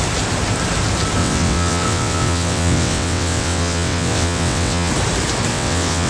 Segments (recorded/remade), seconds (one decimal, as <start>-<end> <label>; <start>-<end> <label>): 0.0-1.2 recorded; 1.2-4.9 remade; 4.9-5.5 recorded; 5.5-6.1 remade